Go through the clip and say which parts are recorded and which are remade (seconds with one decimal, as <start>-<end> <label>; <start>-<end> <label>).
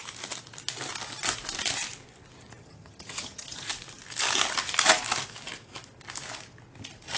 0.0-2.6 recorded; 2.6-3.7 remade; 3.7-7.2 recorded